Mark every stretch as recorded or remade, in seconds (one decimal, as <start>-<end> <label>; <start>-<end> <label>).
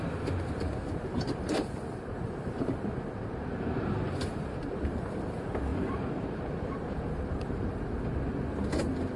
0.0-1.1 recorded; 1.1-5.2 remade; 5.2-5.7 recorded; 5.7-8.0 remade; 8.0-9.2 recorded